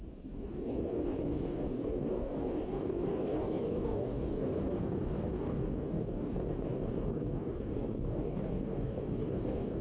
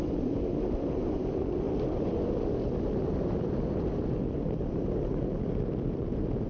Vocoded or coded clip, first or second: first